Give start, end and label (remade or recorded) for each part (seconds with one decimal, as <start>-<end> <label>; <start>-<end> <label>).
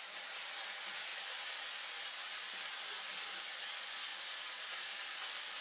0.0-5.6 recorded